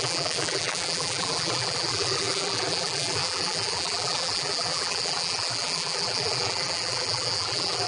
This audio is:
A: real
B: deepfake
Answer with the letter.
B